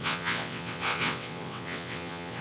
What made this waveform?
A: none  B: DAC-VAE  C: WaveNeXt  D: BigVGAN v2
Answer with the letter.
C